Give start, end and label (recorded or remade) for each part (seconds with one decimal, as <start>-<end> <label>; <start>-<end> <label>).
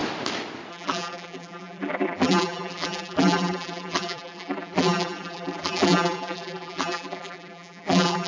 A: 0.0-0.7 recorded; 0.7-8.3 remade